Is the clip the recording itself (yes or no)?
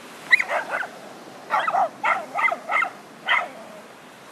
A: yes